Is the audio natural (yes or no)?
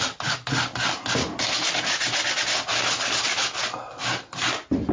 yes